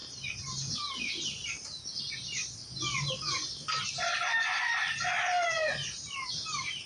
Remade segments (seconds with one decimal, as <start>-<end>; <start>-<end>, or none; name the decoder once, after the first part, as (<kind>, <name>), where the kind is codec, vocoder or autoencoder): none